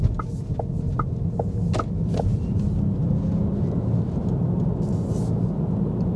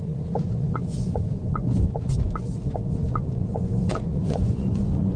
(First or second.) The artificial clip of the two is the second